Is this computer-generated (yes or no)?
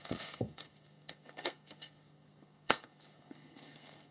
yes